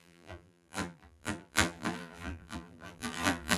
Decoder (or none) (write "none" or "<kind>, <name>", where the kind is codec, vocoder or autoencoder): vocoder, BigVGAN v2